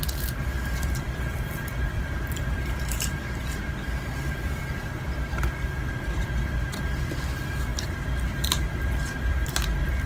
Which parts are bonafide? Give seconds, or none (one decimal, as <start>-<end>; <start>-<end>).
3.6-4.7